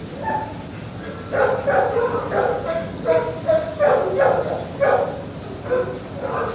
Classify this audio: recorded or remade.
recorded